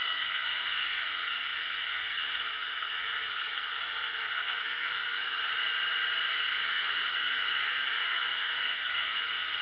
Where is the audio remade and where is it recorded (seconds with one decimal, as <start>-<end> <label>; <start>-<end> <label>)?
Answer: 0.0-5.5 remade; 5.5-6.3 recorded; 6.3-9.6 remade